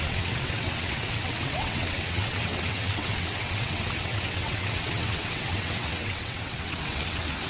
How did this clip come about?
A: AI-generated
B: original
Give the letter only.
A